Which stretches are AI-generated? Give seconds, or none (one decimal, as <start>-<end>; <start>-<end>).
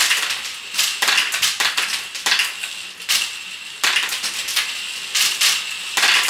none